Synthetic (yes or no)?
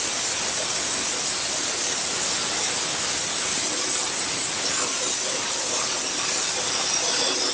no